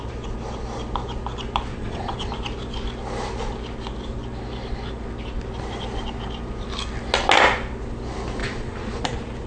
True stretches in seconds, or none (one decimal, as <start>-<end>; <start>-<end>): 0.0-1.7; 2.3-8.4; 9.0-9.5